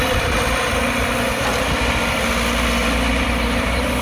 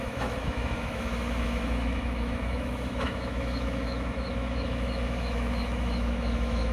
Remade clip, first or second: second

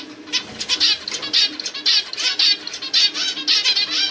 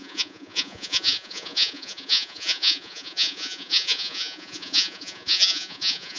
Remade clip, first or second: second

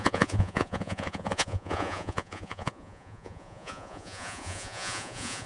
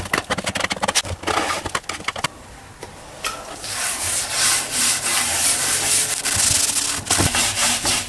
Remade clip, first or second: first